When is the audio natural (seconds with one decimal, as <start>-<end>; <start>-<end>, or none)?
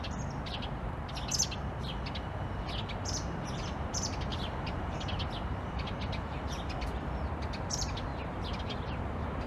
0.0-4.3; 5.0-9.5